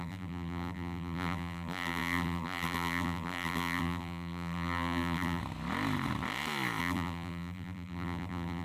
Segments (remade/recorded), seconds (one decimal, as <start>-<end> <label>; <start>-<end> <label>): 0.0-5.4 remade; 5.4-6.8 recorded; 6.8-8.6 remade